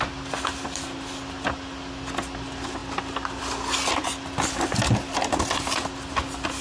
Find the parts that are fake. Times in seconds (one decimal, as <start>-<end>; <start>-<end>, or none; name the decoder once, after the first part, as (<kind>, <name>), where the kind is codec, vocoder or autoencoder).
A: none